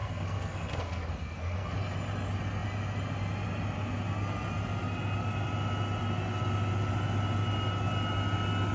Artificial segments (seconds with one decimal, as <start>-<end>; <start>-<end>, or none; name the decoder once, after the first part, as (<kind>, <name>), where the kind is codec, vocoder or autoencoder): 0.0-1.7 (codec, SNAC)